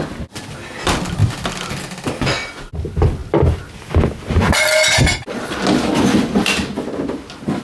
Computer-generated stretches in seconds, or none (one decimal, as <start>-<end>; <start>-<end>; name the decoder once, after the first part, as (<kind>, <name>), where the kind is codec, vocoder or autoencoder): none